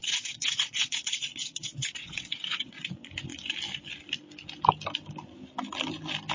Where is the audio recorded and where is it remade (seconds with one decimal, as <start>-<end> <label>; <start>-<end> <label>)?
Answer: 0.0-2.9 remade; 2.9-6.3 recorded